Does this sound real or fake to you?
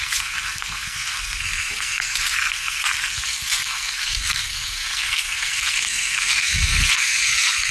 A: fake